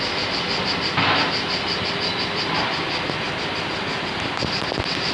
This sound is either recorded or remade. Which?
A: recorded